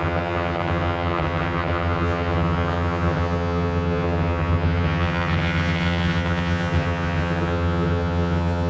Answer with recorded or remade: remade